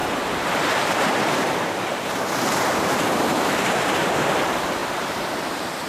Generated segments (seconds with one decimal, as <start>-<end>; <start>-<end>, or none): 0.0-3.5; 4.8-5.9